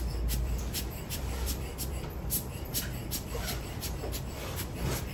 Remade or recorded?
remade